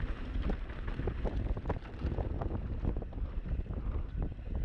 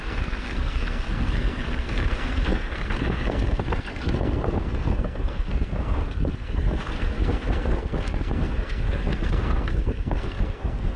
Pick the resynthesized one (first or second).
second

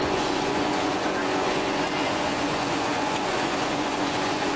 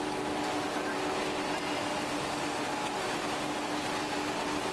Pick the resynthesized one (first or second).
first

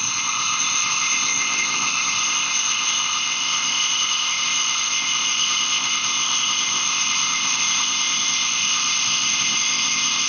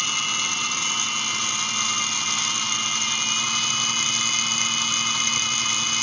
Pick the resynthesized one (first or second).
first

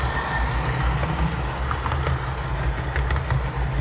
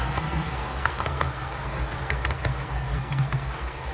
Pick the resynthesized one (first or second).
second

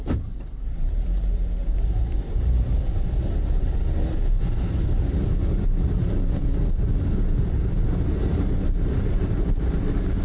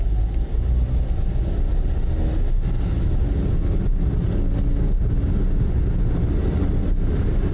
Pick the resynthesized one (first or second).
first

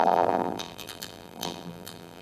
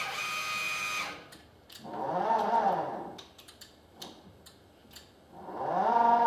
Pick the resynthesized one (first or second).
first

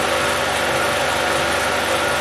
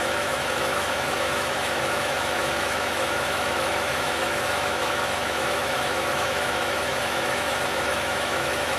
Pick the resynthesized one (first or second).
second